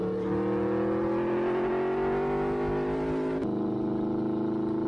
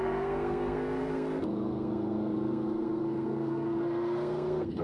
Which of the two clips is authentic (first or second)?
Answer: first